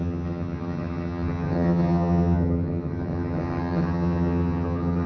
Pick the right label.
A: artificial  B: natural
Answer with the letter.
A